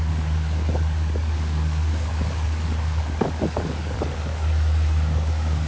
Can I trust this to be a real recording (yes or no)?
no